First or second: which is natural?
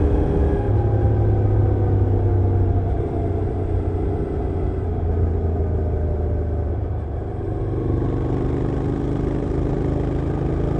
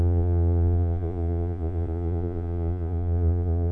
first